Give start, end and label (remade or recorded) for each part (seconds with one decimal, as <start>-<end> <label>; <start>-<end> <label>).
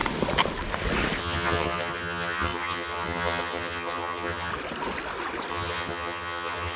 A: 0.0-1.2 recorded; 1.2-4.5 remade; 4.5-5.5 recorded; 5.5-6.8 remade